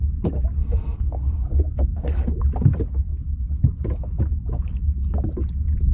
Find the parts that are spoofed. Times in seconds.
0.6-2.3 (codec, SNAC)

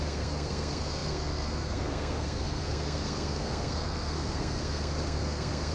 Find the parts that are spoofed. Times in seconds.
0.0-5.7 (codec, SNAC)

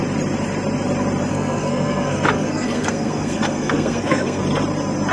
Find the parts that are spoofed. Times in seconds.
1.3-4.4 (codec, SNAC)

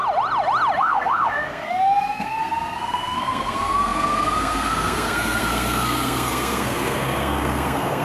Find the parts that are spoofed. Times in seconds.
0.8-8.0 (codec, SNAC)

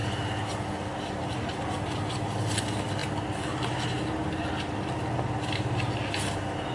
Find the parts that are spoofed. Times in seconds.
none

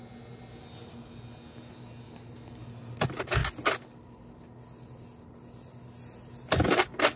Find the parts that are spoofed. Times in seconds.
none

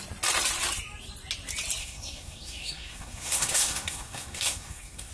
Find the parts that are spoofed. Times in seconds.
1.8-5.1 (codec, SNAC)